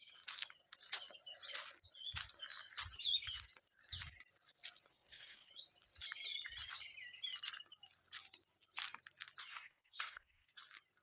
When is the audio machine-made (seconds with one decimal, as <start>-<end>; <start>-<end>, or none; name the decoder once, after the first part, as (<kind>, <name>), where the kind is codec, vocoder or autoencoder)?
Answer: 4.9-5.5 (codec, DAC); 9.5-10.5